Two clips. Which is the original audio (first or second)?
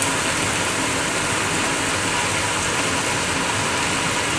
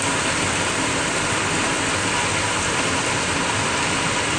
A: first